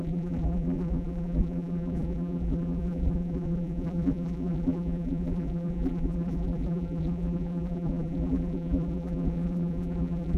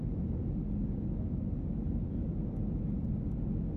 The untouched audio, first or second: second